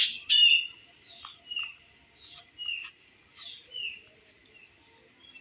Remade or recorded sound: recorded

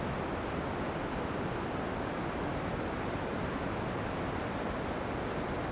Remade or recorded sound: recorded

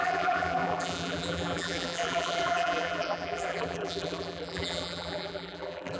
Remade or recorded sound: remade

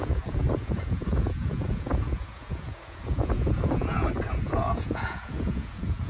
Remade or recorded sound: remade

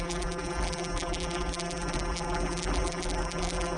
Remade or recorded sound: remade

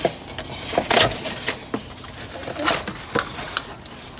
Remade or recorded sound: recorded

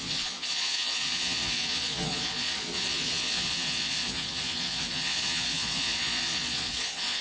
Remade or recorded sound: remade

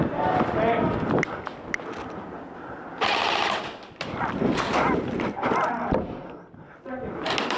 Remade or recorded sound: recorded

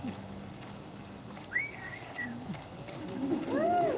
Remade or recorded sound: remade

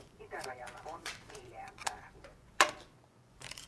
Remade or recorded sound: remade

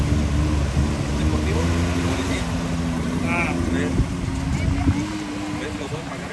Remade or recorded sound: recorded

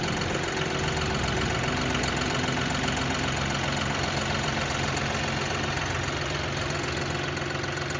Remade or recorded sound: recorded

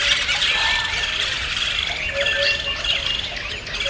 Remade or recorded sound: recorded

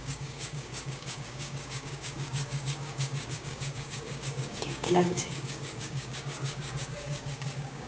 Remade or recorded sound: remade